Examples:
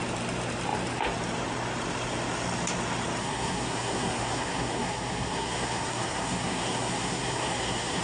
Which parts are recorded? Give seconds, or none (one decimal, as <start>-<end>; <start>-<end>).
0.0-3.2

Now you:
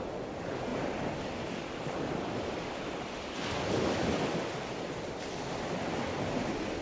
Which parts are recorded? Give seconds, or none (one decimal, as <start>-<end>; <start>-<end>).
0.0-6.8

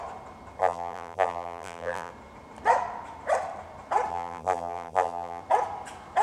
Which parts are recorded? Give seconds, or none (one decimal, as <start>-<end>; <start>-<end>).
0.0-0.6; 2.1-4.1; 5.4-6.2